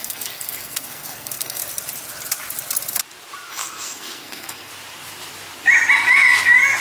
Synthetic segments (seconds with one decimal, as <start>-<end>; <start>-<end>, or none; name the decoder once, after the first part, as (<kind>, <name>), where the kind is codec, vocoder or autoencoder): 0.0-1.6 (codec, SNAC); 3.5-4.7